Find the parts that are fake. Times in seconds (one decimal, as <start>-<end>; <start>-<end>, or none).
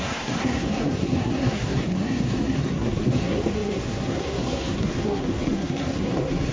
0.0-6.5